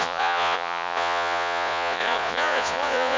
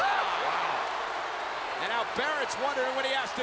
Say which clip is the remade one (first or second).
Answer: first